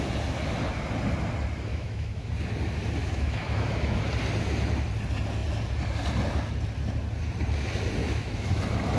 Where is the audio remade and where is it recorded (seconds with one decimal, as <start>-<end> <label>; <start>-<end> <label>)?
0.0-1.7 recorded; 1.7-2.3 remade; 2.3-3.0 recorded; 3.0-4.0 remade; 4.0-8.0 recorded; 8.0-8.6 remade; 8.6-9.0 recorded